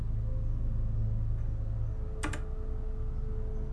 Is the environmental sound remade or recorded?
recorded